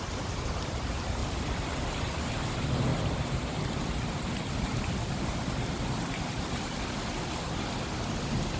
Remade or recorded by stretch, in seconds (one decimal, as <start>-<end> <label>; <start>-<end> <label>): 0.0-8.6 recorded